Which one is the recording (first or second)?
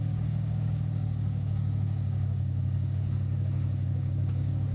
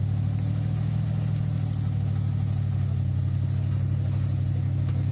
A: second